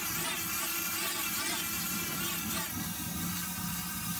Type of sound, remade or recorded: recorded